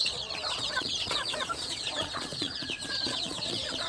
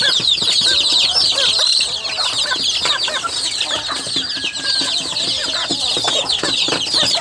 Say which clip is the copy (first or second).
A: first